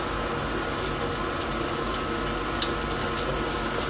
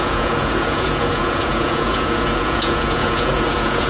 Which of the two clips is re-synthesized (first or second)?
second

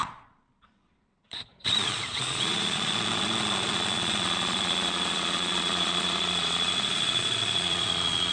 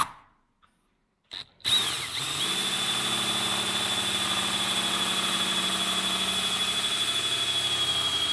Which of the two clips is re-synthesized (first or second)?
first